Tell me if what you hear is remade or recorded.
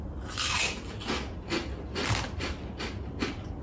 recorded